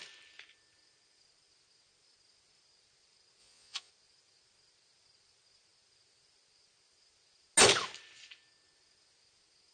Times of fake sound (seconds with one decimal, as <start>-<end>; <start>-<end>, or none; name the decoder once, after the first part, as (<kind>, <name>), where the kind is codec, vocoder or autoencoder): 3.4-3.9 (vocoder, Vocos)

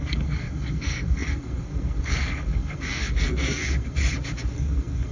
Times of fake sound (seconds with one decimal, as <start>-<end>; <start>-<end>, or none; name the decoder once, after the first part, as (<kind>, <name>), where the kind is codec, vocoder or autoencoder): 0.0-4.0 (codec, SNAC); 4.5-5.1

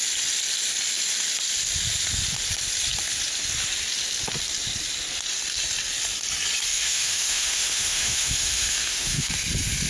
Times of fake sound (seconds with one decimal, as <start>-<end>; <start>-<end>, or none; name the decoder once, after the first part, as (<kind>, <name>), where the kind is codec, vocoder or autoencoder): 6.7-9.3 (autoencoder, DAC-VAE)

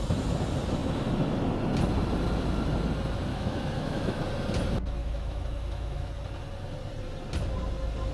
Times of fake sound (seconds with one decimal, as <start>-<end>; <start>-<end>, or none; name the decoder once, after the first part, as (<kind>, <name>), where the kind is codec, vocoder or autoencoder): 3.3-4.2 (autoencoder, DAC-VAE); 5.0-6.1